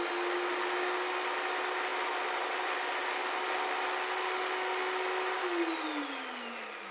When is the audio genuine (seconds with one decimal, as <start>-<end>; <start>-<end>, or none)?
0.0-6.9